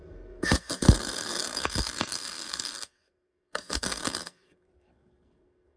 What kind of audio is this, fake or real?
fake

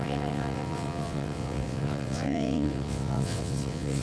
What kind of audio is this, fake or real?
fake